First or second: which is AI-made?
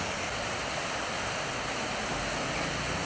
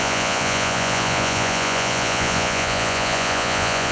second